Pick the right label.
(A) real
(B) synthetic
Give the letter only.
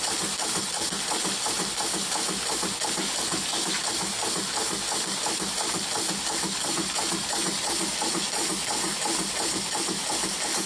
A